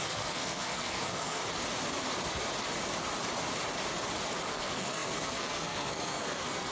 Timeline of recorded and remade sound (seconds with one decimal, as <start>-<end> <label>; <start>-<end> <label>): 0.0-1.4 remade; 1.4-4.5 recorded; 4.5-6.7 remade